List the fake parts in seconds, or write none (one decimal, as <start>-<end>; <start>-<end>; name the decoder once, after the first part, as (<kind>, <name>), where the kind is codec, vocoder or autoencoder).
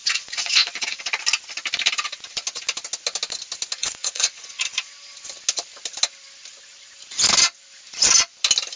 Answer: 0.0-1.0 (vocoder, Vocos); 3.8-4.6